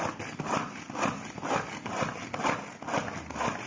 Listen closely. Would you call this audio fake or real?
real